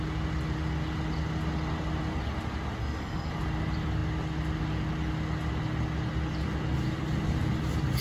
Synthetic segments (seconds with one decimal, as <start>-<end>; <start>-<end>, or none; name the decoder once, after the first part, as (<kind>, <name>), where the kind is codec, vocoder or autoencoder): 2.8-3.3 (codec, SNAC)